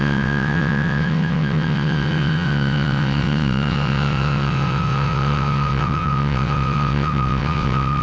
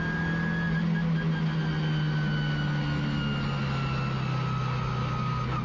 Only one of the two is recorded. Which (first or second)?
second